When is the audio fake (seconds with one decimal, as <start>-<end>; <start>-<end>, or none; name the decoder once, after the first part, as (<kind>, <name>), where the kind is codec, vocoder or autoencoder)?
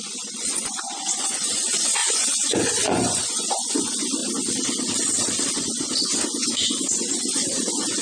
0.0-4.2 (vocoder, Vocos); 5.5-8.0